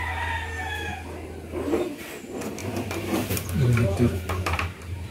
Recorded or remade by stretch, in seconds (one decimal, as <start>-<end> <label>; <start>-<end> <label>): 0.0-2.6 recorded; 2.6-5.1 remade